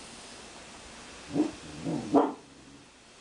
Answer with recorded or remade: recorded